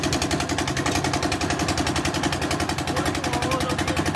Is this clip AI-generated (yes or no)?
no